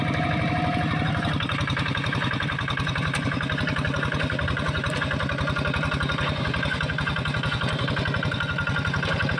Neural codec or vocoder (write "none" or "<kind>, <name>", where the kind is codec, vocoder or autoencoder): none